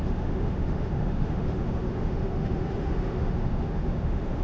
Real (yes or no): no